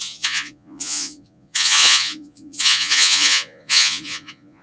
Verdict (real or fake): fake